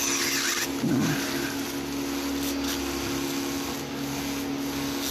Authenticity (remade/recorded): recorded